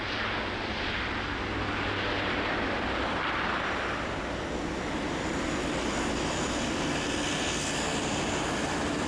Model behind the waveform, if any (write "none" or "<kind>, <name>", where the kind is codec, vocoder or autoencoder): none